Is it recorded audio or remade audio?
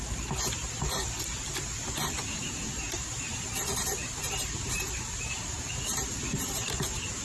remade